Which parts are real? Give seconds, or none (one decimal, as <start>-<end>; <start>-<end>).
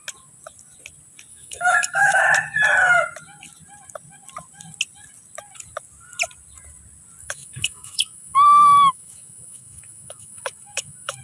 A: 0.0-1.3; 2.2-7.2